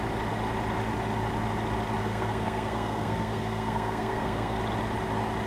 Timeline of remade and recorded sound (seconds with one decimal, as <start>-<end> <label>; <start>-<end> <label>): 0.0-2.0 recorded; 2.0-4.6 remade; 4.6-5.5 recorded